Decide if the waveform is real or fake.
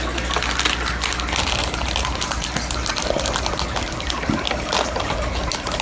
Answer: real